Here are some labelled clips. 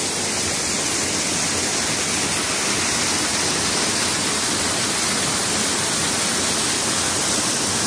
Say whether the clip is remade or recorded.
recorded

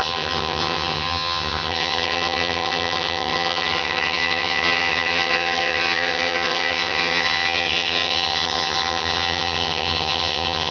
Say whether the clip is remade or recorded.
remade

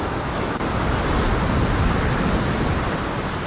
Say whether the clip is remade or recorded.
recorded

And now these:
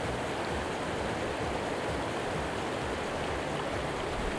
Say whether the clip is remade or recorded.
recorded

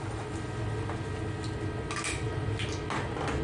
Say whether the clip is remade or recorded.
recorded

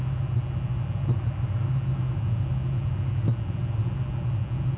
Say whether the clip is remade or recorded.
recorded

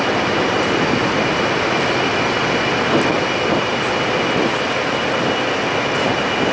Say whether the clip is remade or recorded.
recorded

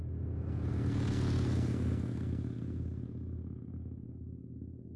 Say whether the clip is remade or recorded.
remade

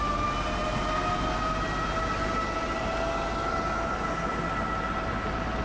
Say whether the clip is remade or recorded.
recorded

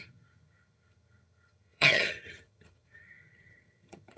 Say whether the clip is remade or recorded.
remade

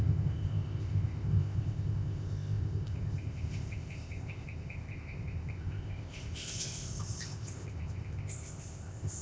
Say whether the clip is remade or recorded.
remade